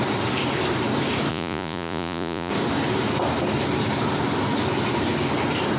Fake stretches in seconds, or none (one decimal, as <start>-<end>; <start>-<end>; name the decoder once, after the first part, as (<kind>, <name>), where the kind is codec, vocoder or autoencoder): 1.3-2.5 (vocoder, Vocos)